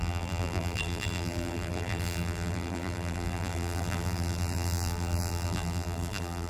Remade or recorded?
remade